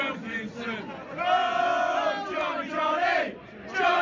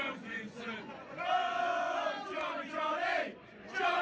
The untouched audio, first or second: first